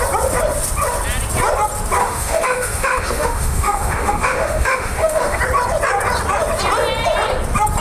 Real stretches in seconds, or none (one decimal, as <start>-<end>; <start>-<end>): 0.0-2.0; 5.4-7.8